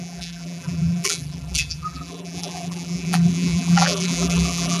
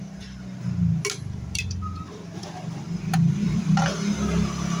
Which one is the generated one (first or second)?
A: first